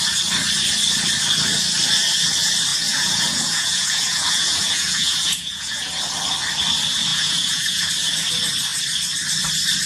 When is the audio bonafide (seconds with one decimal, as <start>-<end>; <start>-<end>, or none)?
0.0-2.7; 6.0-7.1; 7.9-9.9

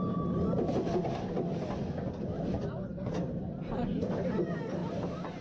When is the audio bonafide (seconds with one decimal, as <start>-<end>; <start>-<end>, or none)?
0.0-5.4

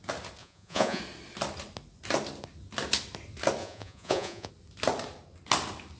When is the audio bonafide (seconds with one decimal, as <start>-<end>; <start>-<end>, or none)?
0.0-0.4; 1.0-3.6; 4.5-6.0

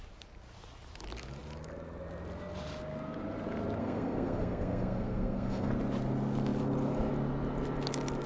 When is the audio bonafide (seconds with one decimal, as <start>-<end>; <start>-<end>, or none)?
0.0-3.8; 5.7-8.3

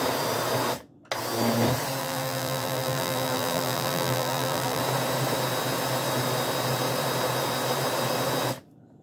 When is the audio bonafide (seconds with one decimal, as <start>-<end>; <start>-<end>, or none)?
0.0-2.0; 4.8-9.0

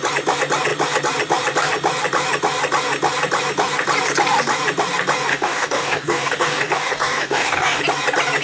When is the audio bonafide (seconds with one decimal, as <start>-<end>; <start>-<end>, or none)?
0.0-5.3; 7.8-8.4

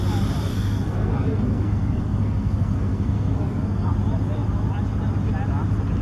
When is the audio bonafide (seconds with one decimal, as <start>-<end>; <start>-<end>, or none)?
0.0-0.5; 3.9-6.0